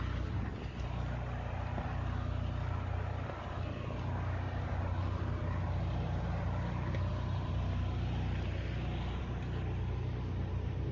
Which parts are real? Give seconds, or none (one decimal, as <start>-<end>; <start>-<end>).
0.0-10.9